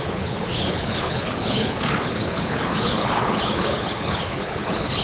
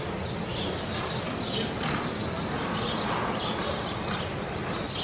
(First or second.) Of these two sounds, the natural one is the second